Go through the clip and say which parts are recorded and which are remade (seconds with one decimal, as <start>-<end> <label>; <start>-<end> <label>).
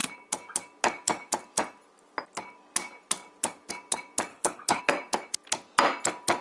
0.0-4.3 recorded; 4.3-4.8 remade; 4.8-6.4 recorded